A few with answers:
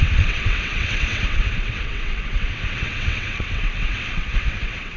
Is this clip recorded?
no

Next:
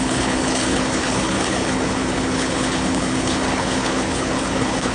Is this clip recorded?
no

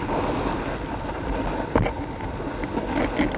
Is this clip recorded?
yes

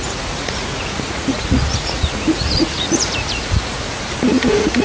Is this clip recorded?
no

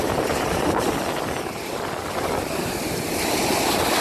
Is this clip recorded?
no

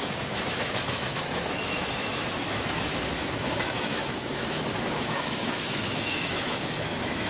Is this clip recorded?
no